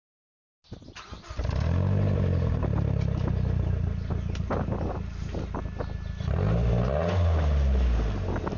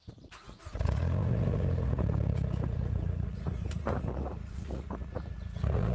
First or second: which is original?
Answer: first